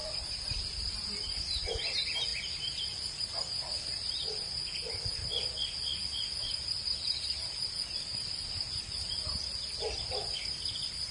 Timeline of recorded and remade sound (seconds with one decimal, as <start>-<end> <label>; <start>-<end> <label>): 0.0-1.7 remade; 1.7-2.3 recorded; 2.3-4.9 remade; 4.9-11.1 recorded